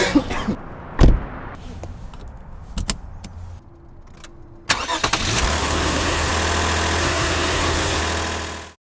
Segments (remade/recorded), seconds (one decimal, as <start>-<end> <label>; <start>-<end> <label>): 0.0-5.6 recorded; 5.6-6.3 remade; 6.3-7.0 recorded; 7.0-8.0 remade; 8.0-9.0 recorded